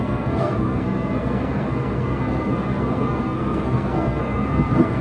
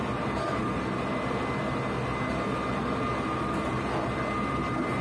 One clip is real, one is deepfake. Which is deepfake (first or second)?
first